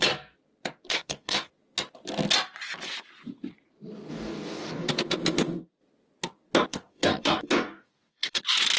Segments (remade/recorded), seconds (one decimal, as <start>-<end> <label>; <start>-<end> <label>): 0.0-0.9 recorded; 0.9-1.5 remade; 1.5-4.1 recorded; 4.1-4.9 remade; 4.9-6.7 recorded; 6.7-8.4 remade; 8.4-8.8 recorded